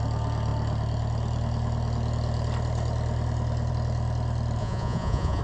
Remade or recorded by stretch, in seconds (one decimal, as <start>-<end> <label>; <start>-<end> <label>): 0.0-4.6 recorded; 4.6-5.4 remade